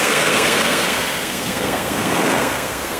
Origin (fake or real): fake